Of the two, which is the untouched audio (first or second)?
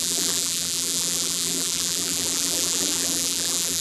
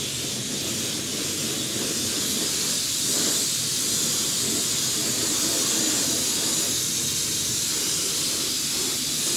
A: second